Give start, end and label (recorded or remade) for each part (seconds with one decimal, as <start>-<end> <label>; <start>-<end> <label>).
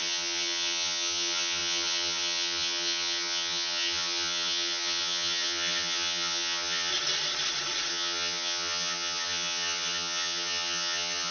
0.0-6.9 remade; 6.9-7.9 recorded; 7.9-11.3 remade